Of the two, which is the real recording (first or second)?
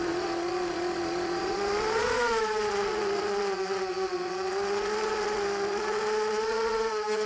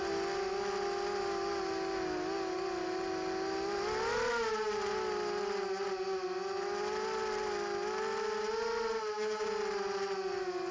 second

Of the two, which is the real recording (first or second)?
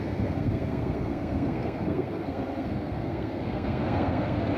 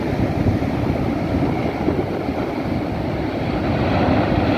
second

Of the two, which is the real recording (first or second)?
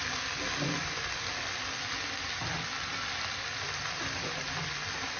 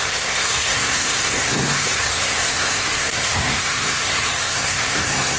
first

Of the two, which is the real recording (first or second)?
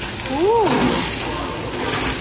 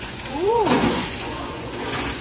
first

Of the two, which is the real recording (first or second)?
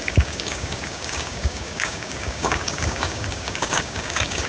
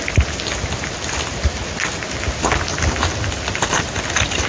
second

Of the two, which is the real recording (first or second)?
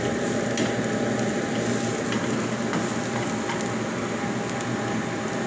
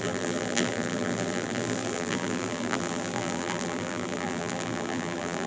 first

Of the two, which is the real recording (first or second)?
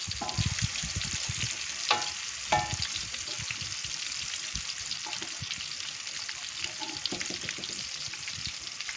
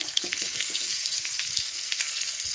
first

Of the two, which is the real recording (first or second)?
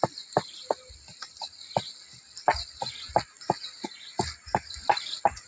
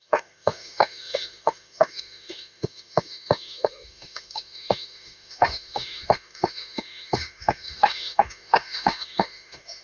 first